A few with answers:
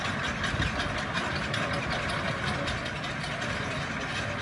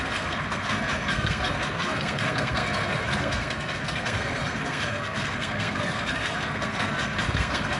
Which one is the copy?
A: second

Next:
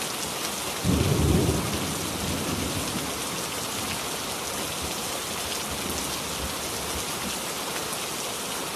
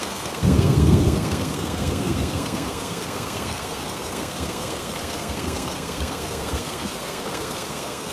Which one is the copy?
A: second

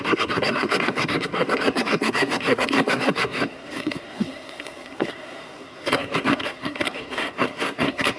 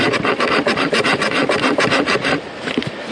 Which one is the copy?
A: first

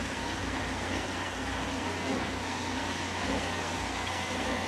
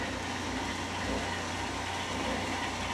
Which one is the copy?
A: first